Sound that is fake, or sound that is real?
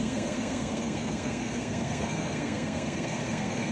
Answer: fake